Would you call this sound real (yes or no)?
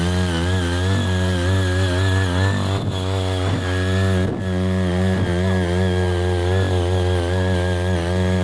yes